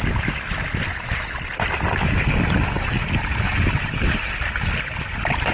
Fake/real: real